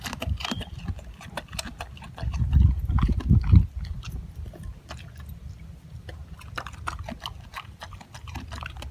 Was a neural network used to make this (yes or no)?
no